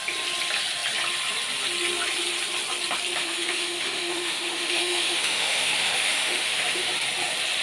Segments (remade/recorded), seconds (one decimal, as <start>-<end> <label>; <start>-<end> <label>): 0.0-3.2 recorded; 3.2-6.9 remade; 6.9-7.6 recorded